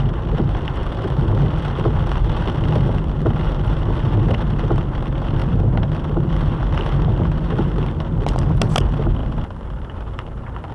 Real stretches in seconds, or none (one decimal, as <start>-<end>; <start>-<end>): 0.0-9.2; 10.1-10.7